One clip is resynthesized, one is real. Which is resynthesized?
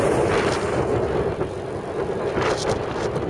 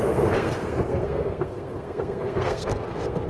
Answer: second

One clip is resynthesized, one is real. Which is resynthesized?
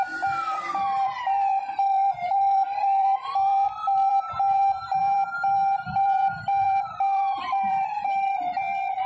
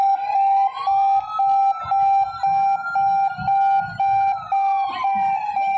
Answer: first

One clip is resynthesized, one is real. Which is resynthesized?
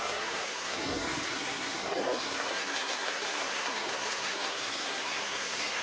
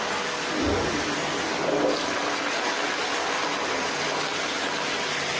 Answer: first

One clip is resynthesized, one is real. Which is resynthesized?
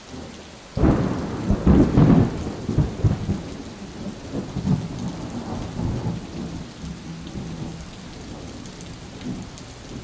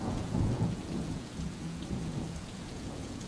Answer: second